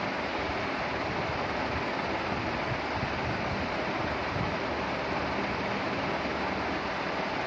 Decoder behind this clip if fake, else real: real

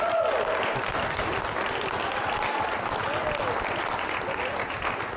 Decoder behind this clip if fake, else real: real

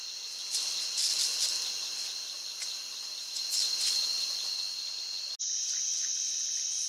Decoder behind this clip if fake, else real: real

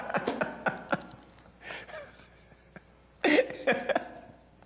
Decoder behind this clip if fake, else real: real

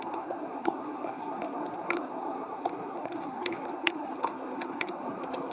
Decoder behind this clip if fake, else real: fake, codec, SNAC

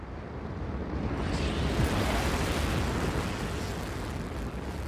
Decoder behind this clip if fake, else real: real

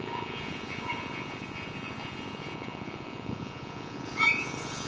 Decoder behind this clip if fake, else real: fake, vocoder, Vocos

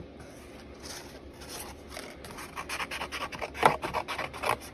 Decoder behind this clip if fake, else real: real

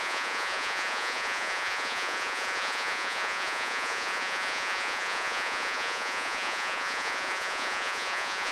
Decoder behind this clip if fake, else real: fake, vocoder, Vocos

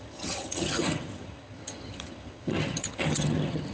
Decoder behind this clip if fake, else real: fake, vocoder, HiFi-GAN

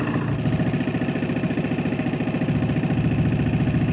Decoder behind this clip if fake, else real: real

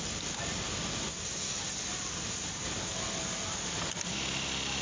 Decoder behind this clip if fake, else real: real